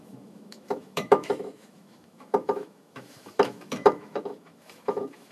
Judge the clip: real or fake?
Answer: fake